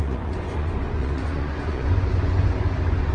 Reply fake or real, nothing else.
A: fake